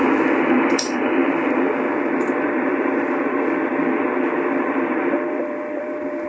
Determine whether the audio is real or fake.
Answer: fake